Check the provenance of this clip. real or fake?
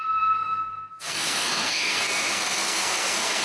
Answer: fake